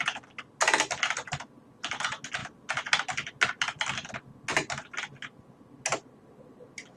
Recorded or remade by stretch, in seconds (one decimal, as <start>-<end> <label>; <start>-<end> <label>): 0.0-7.0 recorded